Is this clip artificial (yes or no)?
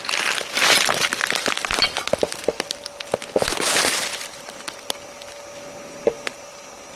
no